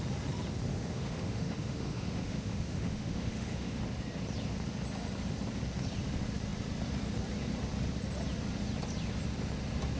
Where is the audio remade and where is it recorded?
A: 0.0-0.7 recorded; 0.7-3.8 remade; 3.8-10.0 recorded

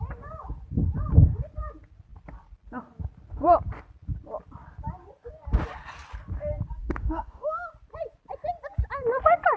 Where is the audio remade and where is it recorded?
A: 0.0-6.8 recorded; 6.8-7.7 remade; 7.7-9.6 recorded

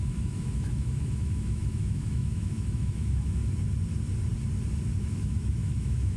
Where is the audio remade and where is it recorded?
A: 0.0-3.4 remade; 3.4-5.0 recorded; 5.0-6.2 remade

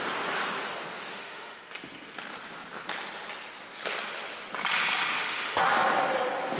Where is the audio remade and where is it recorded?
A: 0.0-1.1 recorded; 1.1-1.7 remade; 1.7-5.1 recorded; 5.1-5.7 remade; 5.7-6.6 recorded